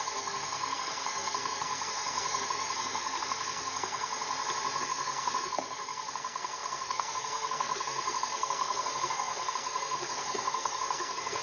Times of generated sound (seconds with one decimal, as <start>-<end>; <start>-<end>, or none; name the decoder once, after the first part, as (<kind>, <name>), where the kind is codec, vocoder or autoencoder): 0.0-4.1 (codec, SNAC); 4.8-11.4